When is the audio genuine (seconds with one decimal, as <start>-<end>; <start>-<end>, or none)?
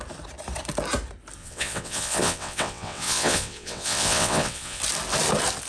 0.0-1.4; 4.8-5.7